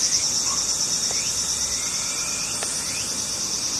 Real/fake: fake